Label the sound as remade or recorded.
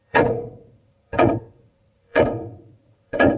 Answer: remade